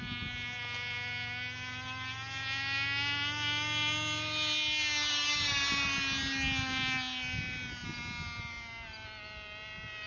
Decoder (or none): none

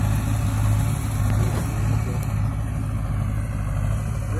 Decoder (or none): none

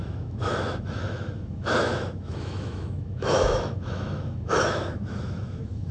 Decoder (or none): autoencoder, DAC-VAE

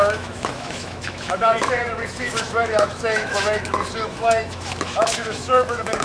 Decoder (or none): autoencoder, DAC-VAE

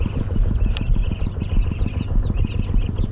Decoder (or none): none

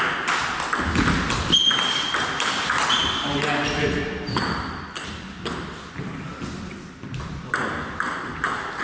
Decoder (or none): none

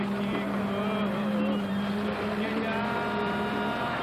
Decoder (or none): none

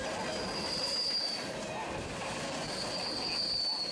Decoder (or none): none